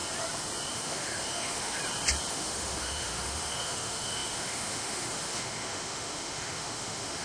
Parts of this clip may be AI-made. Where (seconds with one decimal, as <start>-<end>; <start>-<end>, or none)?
0.7-1.8; 2.3-7.2